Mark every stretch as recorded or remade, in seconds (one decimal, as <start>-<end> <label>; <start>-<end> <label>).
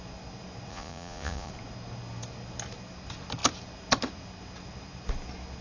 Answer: 0.0-0.7 recorded; 0.7-1.5 remade; 1.5-5.6 recorded